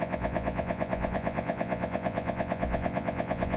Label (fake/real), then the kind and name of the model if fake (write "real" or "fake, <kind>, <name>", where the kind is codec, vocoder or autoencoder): fake, vocoder, Vocos